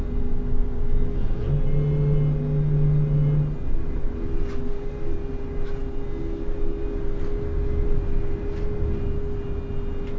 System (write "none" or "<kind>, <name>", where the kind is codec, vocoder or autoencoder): none